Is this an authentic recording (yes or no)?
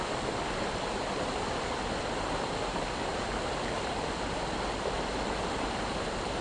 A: yes